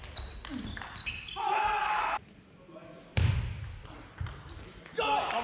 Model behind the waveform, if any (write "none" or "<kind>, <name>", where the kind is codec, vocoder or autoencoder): none